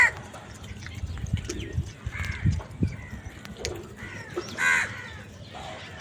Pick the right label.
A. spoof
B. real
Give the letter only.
B